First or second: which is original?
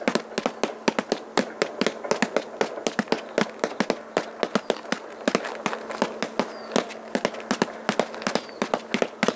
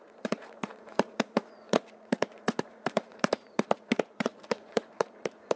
first